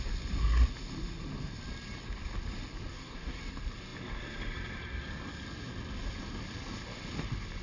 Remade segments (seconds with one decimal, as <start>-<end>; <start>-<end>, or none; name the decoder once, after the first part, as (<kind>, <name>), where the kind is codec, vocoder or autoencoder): 2.9-3.4 (codec, SNAC)